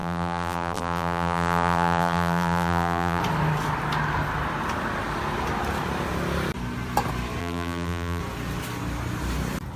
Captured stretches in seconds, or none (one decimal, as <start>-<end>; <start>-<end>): 3.2-7.4; 8.2-9.8